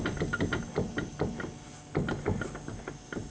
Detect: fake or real real